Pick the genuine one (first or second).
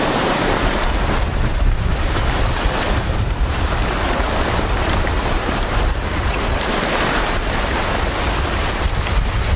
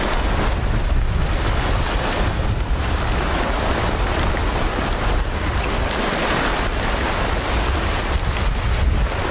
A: second